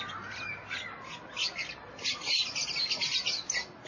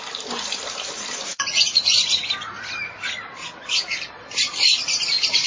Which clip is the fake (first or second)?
second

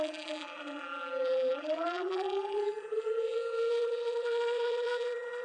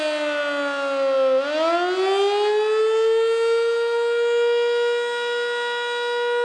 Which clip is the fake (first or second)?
first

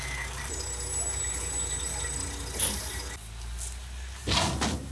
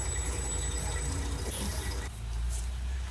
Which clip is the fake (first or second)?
second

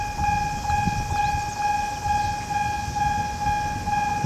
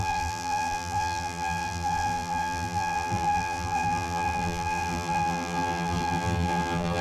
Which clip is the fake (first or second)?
second